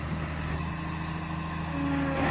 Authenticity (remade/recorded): recorded